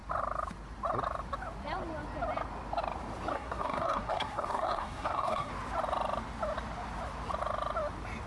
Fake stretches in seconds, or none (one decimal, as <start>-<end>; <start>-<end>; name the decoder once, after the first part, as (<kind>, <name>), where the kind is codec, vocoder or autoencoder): 3.3-5.5 (codec, SNAC)